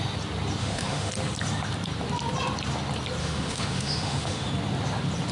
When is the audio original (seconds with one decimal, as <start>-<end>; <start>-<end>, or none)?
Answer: 0.0-0.6; 1.1-3.2; 4.5-5.3